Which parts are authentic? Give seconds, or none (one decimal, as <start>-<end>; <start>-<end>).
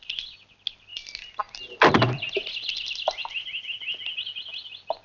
0.0-0.9; 3.6-5.0